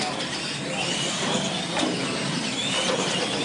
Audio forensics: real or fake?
real